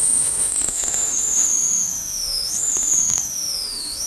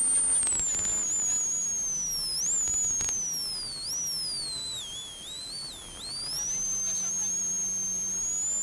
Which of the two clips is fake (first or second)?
first